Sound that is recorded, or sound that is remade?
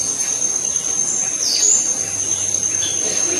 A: recorded